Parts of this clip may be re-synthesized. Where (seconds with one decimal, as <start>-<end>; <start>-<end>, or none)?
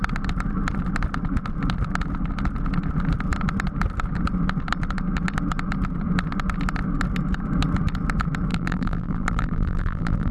8.5-10.3